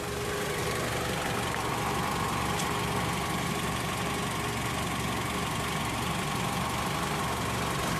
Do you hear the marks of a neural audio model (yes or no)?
no